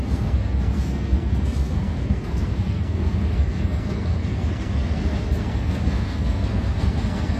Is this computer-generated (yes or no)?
yes